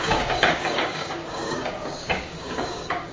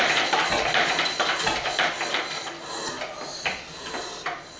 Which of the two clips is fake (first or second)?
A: first